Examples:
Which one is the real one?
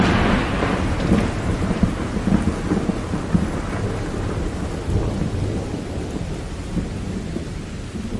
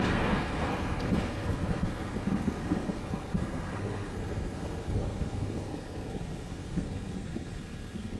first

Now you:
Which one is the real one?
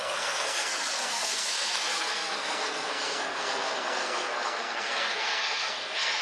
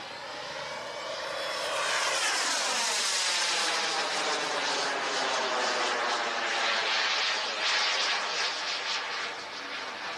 second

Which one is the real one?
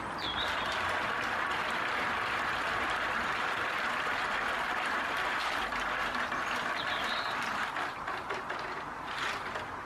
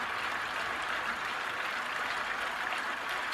second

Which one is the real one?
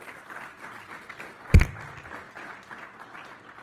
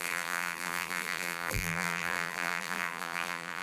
first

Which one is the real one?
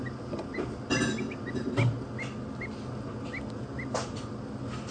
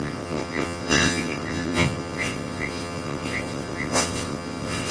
first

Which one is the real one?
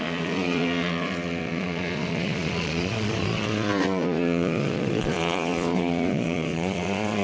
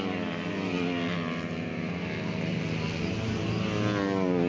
second